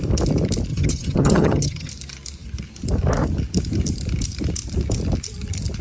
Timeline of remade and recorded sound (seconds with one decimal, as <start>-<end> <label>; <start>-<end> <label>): 0.0-0.7 recorded; 0.7-1.9 remade; 1.9-5.8 recorded